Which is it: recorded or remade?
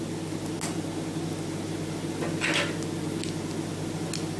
recorded